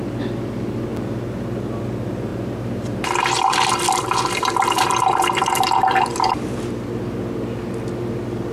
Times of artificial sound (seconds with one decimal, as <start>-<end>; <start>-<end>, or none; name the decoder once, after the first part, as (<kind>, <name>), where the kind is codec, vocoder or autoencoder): 2.3-6.7 (vocoder, BigVGAN v2)